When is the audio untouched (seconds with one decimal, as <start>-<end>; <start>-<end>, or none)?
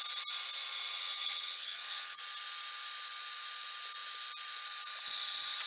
0.0-0.9; 2.2-5.7